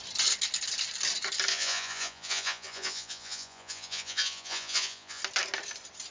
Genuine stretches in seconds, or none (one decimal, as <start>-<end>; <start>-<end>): 0.0-1.5; 5.2-6.1